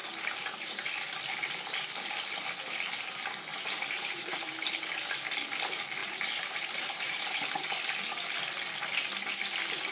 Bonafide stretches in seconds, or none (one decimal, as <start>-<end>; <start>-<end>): 1.1-3.5; 4.5-6.0; 7.8-9.9